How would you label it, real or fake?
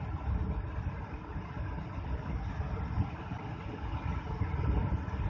real